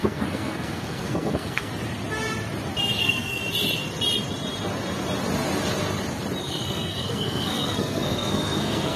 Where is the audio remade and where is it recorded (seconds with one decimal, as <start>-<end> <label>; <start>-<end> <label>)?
0.0-1.7 remade; 1.7-3.0 recorded; 3.0-3.4 remade; 3.4-6.4 recorded; 6.4-9.0 remade